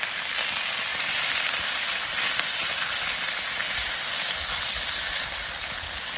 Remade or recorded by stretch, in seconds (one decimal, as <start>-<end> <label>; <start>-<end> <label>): 0.0-6.2 remade